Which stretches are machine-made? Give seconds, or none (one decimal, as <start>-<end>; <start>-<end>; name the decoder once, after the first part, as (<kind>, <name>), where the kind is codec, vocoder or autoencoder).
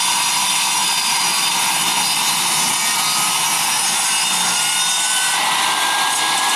none